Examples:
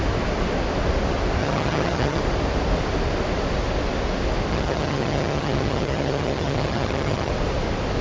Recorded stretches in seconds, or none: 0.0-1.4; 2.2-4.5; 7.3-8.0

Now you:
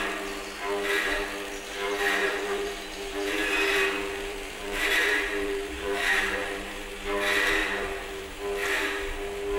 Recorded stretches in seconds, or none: 0.0-2.2; 6.9-7.6; 8.4-9.6